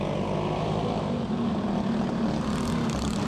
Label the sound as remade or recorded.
recorded